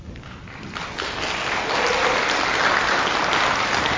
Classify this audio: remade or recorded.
recorded